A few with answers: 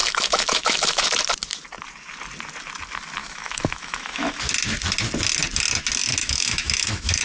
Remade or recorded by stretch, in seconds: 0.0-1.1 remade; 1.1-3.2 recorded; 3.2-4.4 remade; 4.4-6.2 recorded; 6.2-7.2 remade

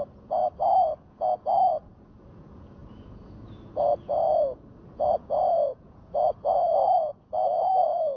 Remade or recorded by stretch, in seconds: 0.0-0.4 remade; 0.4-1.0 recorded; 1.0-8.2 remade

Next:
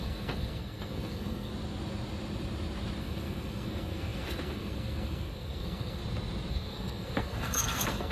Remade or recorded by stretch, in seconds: 0.0-1.5 remade; 1.5-3.0 recorded; 3.0-6.0 remade; 6.0-6.5 recorded; 6.5-8.1 remade